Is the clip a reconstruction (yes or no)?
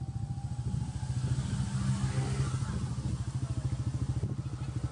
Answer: no